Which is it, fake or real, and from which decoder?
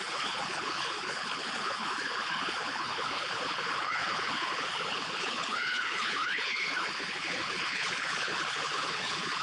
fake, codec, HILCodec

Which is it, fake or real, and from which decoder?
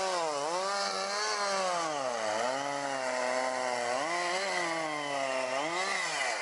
real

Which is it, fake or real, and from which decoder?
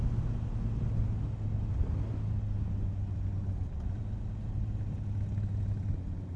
real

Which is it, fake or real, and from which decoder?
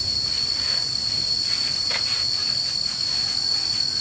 real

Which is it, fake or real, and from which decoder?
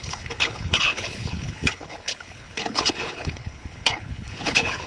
fake, codec, HILCodec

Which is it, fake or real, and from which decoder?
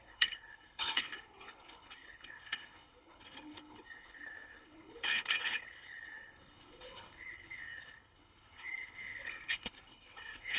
fake, codec, HILCodec